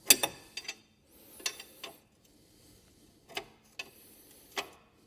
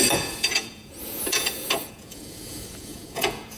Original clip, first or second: first